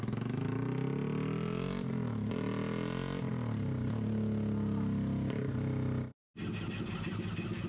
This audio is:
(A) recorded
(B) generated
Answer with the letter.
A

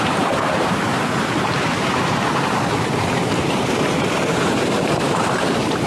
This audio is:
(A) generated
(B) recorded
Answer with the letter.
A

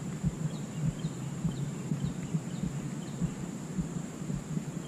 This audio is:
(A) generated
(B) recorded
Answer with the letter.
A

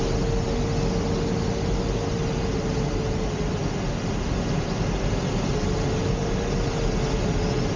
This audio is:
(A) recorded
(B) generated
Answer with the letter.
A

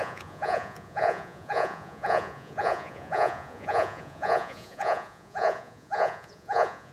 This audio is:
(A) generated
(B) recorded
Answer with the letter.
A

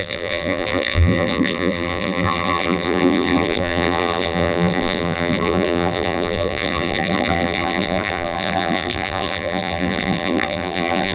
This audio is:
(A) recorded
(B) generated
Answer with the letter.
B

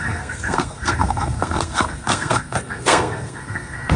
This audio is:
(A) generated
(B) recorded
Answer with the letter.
A